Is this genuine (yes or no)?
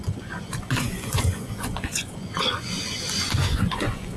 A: no